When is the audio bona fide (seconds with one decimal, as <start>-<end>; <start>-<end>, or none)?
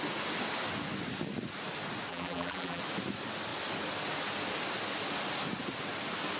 0.0-2.1; 2.8-6.4